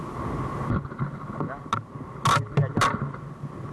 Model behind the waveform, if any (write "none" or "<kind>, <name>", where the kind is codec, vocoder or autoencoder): none